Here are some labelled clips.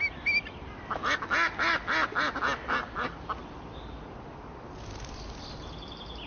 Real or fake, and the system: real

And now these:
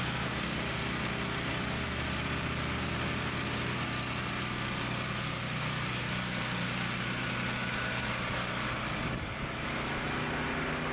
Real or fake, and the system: real